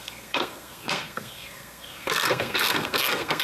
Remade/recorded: remade